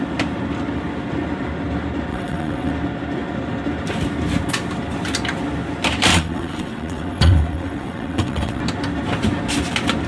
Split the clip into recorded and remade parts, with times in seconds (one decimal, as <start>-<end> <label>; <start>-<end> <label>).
0.0-2.1 recorded; 2.1-2.7 remade; 2.7-6.1 recorded; 6.1-8.6 remade; 8.6-10.1 recorded